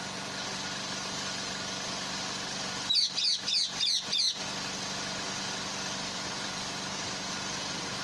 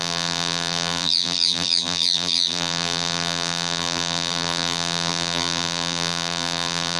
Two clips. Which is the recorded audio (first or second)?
first